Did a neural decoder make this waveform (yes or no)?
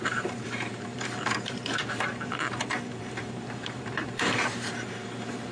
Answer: yes